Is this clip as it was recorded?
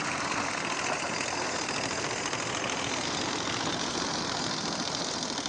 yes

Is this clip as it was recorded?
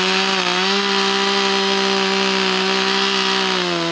yes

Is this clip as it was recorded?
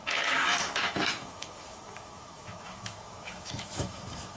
no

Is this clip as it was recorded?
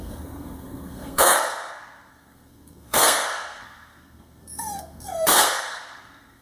no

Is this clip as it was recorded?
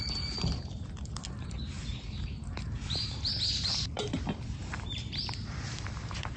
no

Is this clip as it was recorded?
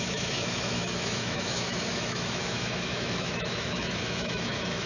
no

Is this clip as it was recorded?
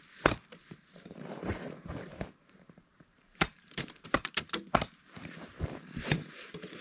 no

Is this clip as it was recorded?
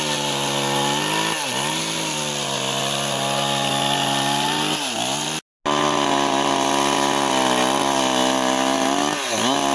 yes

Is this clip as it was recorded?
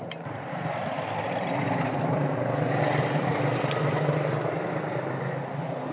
yes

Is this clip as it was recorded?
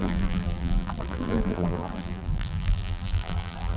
no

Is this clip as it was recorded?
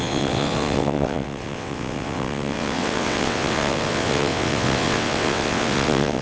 no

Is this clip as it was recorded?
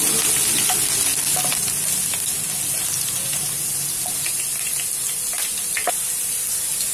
yes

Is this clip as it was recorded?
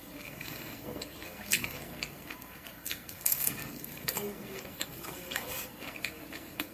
no